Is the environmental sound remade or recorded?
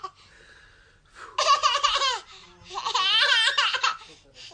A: recorded